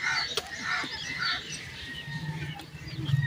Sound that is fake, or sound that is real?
fake